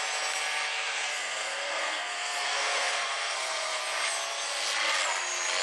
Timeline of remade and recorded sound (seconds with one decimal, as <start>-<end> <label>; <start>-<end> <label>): 0.0-0.7 recorded; 0.7-3.8 remade; 3.8-5.6 recorded